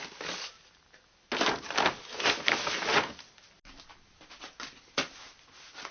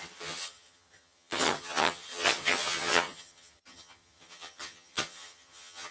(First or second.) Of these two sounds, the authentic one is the first